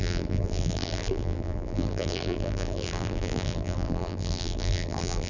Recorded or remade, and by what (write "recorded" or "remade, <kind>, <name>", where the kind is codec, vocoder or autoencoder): remade, vocoder, BigVGAN v2